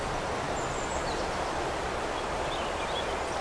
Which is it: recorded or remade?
recorded